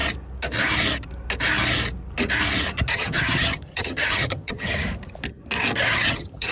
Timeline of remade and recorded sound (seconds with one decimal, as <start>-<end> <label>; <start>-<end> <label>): 0.0-2.9 recorded; 2.9-4.7 remade; 4.7-5.8 recorded; 5.8-6.5 remade